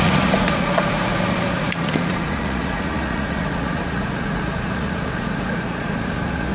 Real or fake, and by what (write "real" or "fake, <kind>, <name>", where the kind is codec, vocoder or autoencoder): fake, vocoder, Vocos